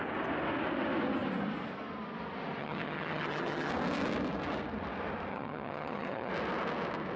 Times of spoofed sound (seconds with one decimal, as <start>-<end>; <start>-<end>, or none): 2.6-3.7; 5.3-6.3